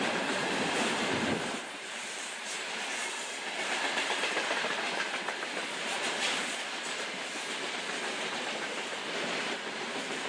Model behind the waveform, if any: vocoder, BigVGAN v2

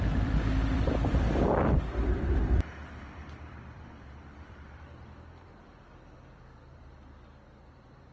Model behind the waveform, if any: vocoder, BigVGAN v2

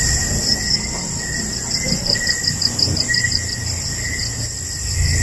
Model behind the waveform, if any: none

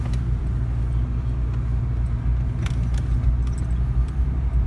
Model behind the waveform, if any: none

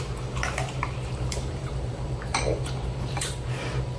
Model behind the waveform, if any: vocoder, BigVGAN v2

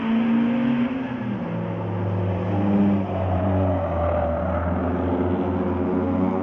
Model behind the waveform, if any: none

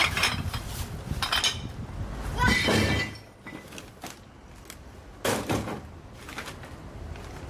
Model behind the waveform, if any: none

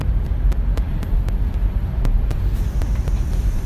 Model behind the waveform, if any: vocoder, BigVGAN v2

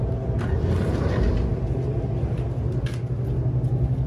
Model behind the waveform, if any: none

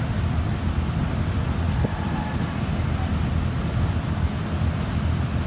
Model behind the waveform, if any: none